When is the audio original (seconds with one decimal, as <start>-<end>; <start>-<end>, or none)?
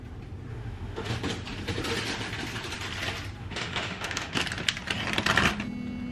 0.0-0.5; 1.1-3.4; 4.4-6.1